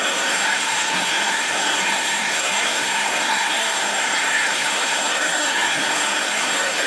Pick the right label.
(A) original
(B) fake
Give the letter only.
B